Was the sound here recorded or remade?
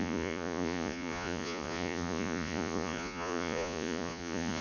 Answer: remade